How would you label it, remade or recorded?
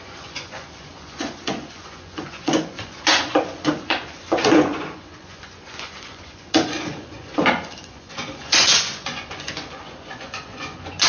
remade